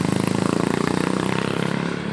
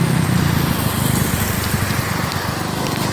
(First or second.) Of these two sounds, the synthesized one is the first